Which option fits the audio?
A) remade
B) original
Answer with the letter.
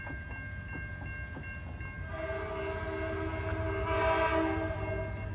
B